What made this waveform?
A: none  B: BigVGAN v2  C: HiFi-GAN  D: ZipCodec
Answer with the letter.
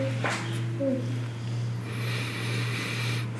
A